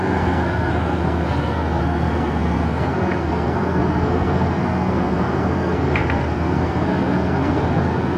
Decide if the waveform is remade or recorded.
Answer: remade